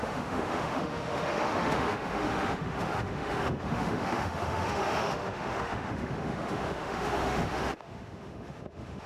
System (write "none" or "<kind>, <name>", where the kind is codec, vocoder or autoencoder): autoencoder, DAC-VAE